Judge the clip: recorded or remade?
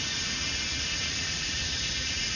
remade